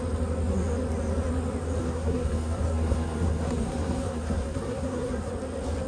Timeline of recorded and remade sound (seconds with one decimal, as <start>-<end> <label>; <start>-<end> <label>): 0.0-1.8 recorded; 1.8-5.3 remade; 5.3-5.9 recorded